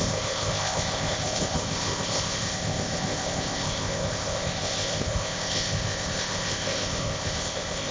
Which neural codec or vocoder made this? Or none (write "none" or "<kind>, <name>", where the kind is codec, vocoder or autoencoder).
codec, ZipCodec